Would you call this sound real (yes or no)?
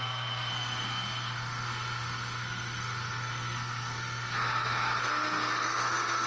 no